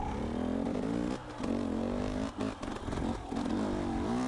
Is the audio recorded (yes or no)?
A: yes